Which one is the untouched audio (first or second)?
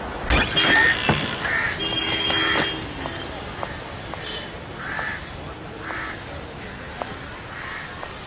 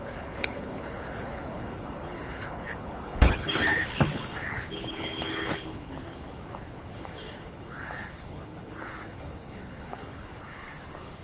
first